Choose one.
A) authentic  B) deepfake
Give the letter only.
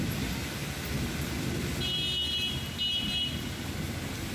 A